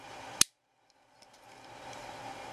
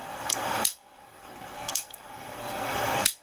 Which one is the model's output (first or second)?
second